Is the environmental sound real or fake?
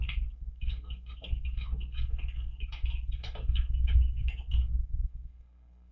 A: fake